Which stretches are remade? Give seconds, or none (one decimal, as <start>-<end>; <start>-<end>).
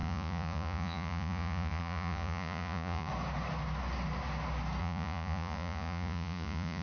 0.0-3.1; 4.8-6.8